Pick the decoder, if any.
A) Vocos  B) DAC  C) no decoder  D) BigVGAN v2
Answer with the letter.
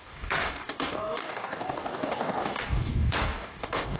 B